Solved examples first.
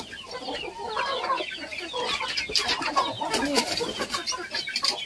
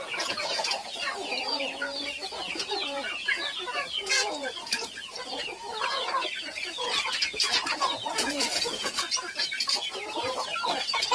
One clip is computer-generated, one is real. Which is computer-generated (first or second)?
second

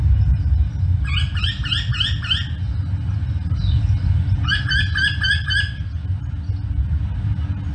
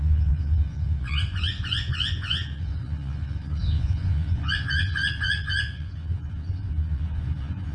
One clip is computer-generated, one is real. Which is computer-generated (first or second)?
second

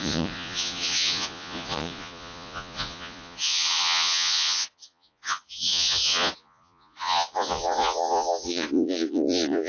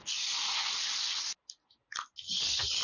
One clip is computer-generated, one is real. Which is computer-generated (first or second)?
first